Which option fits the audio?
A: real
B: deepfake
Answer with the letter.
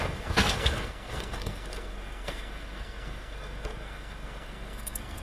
B